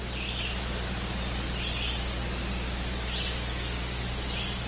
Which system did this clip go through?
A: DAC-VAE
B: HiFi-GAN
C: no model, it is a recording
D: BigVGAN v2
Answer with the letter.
C